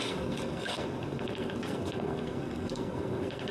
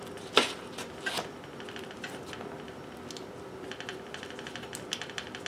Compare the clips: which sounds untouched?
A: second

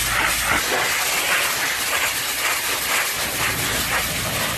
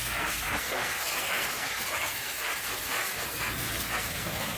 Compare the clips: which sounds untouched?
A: first